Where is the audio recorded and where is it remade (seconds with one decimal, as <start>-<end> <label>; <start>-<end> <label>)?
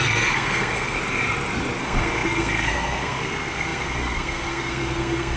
0.0-1.0 remade; 1.0-1.8 recorded; 1.8-5.4 remade